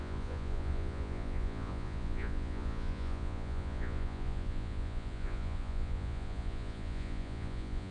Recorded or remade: remade